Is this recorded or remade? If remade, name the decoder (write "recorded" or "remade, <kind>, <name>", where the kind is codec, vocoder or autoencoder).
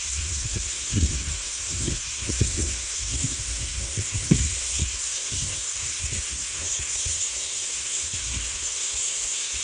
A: remade, codec, SNAC